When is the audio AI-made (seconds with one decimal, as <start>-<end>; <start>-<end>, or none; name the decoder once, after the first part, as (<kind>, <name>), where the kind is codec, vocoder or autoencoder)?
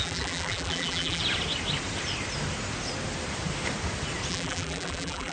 0.0-1.2 (vocoder, BigVGAN v2); 4.3-5.3